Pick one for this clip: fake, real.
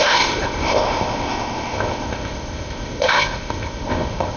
fake